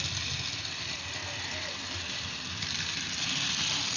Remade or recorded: recorded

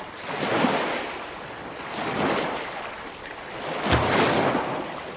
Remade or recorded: recorded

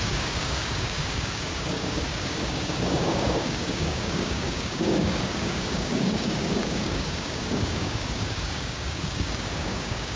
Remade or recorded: remade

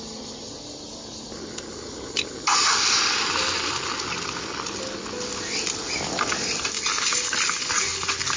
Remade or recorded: recorded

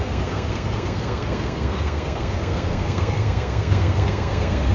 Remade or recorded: remade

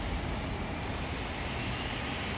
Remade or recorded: recorded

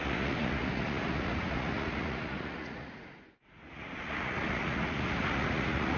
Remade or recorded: remade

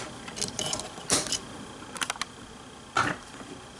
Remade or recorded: recorded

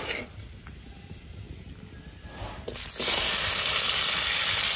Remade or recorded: recorded